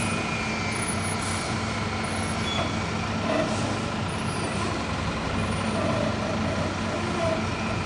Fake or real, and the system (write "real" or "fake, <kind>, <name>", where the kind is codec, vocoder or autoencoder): real